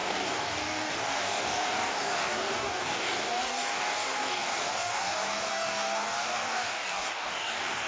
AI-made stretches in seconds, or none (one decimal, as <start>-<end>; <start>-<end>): 0.0-7.9